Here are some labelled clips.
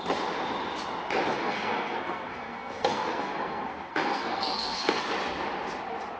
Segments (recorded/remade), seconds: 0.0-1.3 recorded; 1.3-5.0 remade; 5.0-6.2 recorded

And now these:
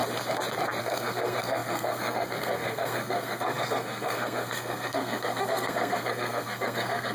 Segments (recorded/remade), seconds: 0.0-0.8 recorded; 0.8-7.1 remade